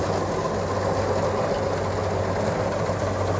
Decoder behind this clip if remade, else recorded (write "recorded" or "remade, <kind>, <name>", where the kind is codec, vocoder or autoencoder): recorded